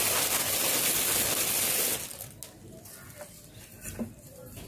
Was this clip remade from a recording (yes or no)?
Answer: no